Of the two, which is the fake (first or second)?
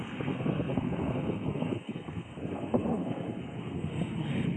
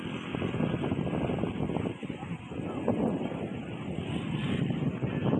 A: first